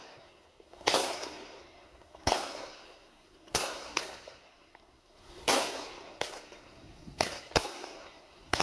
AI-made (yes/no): yes